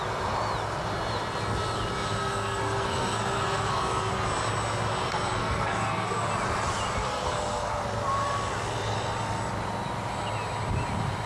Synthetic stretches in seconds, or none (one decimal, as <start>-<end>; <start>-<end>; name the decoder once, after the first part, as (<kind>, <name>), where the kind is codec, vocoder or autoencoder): 2.2-4.1 (codec, SNAC); 5.4-6.3; 7.0-7.8